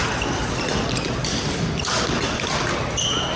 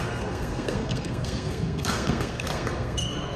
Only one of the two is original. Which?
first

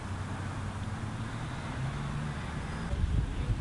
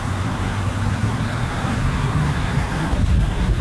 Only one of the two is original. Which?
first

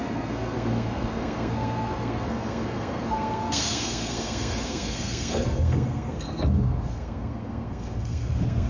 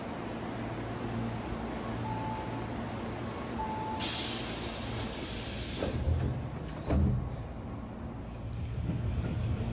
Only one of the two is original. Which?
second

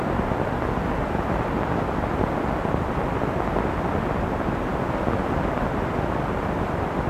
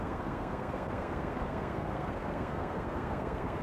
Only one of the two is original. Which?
first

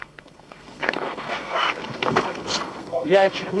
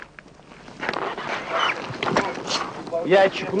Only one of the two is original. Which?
second